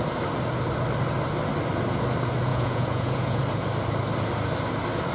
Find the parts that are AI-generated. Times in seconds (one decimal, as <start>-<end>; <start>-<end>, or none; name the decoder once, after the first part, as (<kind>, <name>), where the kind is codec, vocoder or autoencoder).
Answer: 2.5-3.4 (vocoder, Vocos)